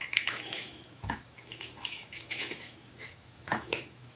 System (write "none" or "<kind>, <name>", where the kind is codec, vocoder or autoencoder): autoencoder, DAC-VAE